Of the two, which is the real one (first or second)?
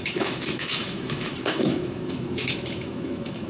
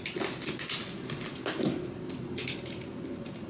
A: second